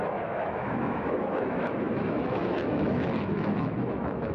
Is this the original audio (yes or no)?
no